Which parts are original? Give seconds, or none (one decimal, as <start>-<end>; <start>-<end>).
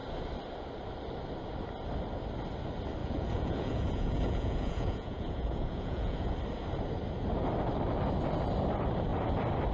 0.0-3.0; 6.3-9.7